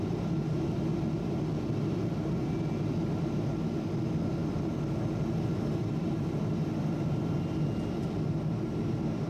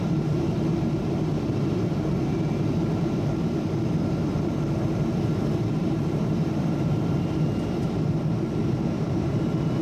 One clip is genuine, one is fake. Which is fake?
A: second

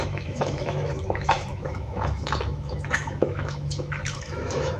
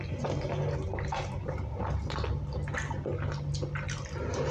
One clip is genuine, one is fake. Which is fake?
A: first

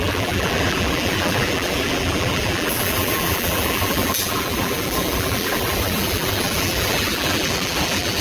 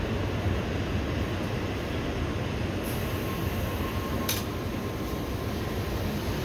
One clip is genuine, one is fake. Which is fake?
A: first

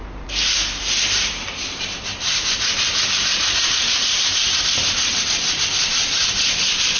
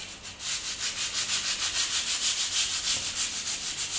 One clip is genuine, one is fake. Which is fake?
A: first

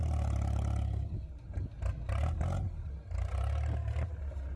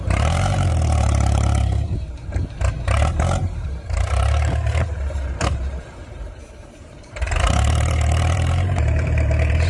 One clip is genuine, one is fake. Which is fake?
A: second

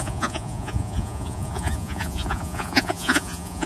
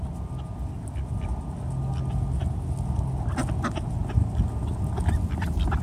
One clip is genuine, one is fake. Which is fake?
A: first